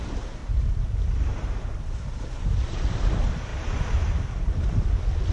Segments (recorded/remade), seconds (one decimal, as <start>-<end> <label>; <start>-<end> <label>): 0.0-0.4 recorded; 0.4-0.9 remade; 0.9-1.3 recorded; 1.3-3.1 remade; 3.1-3.5 recorded; 3.5-4.3 remade; 4.3-5.3 recorded

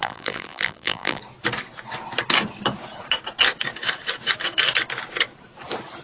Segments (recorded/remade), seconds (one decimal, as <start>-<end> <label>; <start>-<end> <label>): 0.0-1.2 remade; 1.2-6.0 recorded

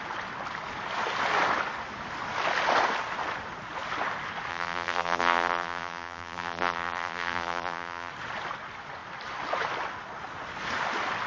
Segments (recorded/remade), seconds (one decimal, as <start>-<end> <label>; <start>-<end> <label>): 0.0-4.5 recorded; 4.5-8.1 remade; 8.1-11.3 recorded

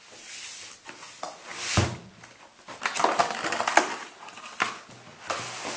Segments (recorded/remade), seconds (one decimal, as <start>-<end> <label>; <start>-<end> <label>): 0.0-1.5 recorded; 1.5-3.2 remade; 3.2-5.8 recorded

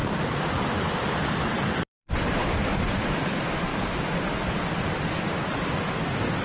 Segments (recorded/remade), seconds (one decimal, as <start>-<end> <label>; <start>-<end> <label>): 0.0-0.7 recorded; 0.7-3.7 remade; 3.7-5.0 recorded; 5.0-6.4 remade